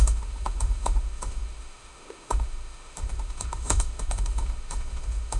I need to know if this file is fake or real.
fake